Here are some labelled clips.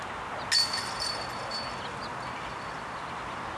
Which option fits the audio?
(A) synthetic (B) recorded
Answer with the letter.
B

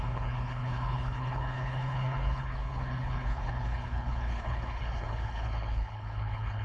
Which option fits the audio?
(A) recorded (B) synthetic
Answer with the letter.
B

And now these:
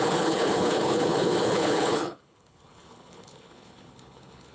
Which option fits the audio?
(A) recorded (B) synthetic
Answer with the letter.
B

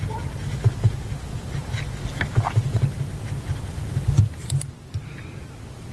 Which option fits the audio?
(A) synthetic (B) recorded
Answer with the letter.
B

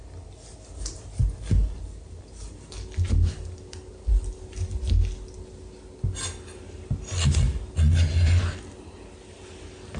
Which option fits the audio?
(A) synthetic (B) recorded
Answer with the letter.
B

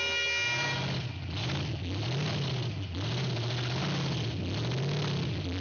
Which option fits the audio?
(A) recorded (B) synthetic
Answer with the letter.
A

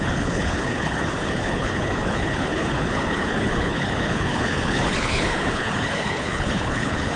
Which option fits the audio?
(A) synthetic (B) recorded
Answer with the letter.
A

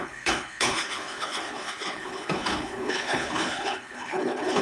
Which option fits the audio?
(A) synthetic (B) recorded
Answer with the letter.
A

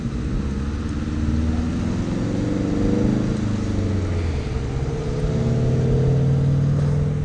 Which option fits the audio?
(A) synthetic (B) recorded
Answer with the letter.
B